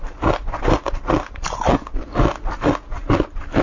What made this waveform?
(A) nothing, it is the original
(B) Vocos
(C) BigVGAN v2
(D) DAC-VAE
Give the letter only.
A